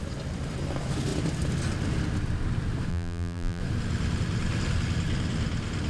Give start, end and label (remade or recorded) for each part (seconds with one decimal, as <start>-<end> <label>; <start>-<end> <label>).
0.0-2.9 recorded; 2.9-3.6 remade; 3.6-5.9 recorded